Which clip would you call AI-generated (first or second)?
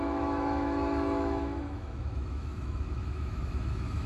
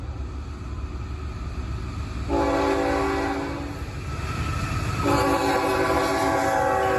first